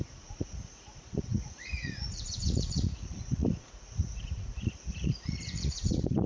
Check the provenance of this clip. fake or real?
fake